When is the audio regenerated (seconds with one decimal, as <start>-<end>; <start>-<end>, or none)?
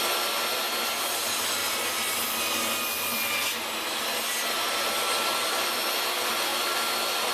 none